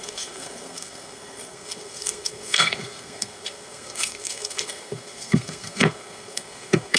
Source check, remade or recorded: remade